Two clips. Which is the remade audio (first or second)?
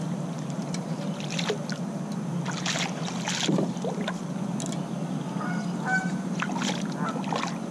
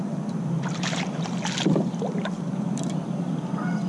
second